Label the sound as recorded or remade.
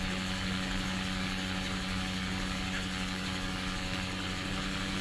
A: remade